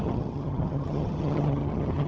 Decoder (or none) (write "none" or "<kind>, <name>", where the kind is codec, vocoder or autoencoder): vocoder, HiFi-GAN